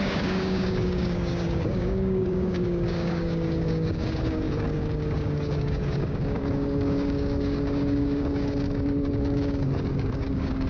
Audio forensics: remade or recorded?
remade